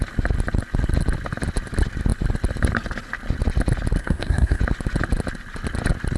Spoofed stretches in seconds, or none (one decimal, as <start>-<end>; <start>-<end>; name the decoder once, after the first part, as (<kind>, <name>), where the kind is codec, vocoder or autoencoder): 4.0-4.6 (codec, SNAC)

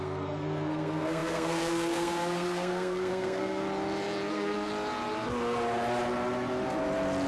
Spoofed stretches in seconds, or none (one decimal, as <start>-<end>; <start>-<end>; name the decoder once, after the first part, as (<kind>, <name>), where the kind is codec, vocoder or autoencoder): 0.0-3.6 (codec, SNAC); 4.3-4.7

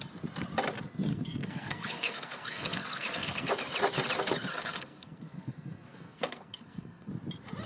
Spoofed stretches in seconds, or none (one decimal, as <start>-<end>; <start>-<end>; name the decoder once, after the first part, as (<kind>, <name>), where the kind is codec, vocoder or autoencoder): 1.1-3.5 (codec, SNAC); 4.5-7.1

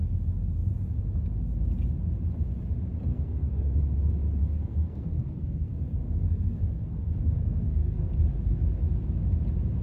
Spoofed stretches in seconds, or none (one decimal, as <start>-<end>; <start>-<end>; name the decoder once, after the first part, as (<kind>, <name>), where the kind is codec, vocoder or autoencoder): 3.1-3.8 (codec, SNAC); 4.4-8.1

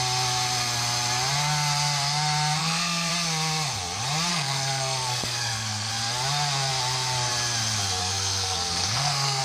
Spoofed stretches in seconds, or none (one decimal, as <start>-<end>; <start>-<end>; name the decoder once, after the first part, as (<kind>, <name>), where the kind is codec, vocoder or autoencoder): 2.6-3.1 (codec, SNAC); 4.3-5.9; 8.0-9.4